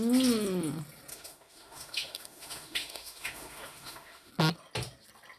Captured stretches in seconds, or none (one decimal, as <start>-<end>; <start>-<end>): 0.0-1.1; 4.3-5.4